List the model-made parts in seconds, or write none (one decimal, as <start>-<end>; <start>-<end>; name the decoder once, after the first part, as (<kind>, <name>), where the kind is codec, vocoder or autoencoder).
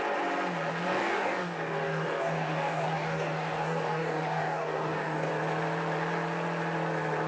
0.9-5.3 (codec, DAC)